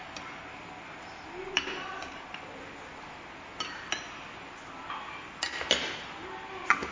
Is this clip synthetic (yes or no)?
no